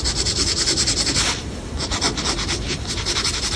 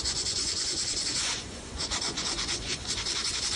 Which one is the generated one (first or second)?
second